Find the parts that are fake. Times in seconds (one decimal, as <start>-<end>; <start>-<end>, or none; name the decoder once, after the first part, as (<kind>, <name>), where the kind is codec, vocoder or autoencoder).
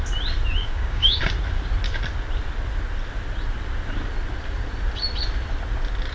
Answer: 0.6-1.2 (codec, DAC)